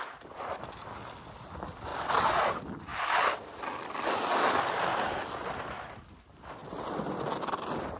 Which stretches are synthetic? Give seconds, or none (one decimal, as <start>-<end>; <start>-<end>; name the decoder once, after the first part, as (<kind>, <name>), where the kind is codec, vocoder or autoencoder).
1.9-2.5 (vocoder, BigVGAN v2); 4.9-5.6